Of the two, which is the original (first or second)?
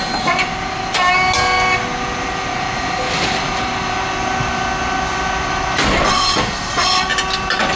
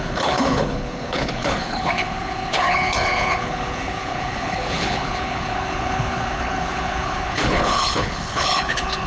first